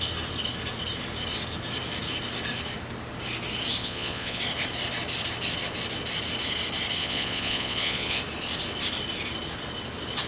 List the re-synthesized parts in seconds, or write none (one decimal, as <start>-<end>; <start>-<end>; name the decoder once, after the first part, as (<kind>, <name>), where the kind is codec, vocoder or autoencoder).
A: 3.8-4.4 (vocoder, Vocos); 7.0-8.2